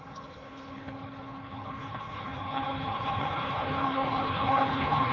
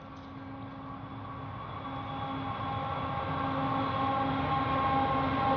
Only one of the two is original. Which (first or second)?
second